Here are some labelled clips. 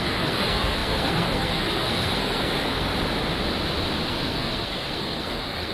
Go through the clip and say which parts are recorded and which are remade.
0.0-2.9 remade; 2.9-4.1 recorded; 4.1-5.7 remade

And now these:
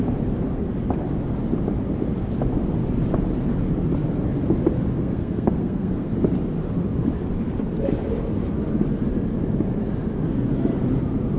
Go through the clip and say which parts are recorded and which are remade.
0.0-5.0 recorded; 5.0-6.1 remade; 6.1-11.4 recorded